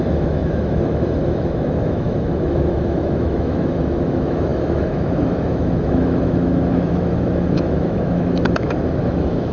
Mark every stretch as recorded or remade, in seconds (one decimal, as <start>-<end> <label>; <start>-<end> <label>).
0.0-9.5 remade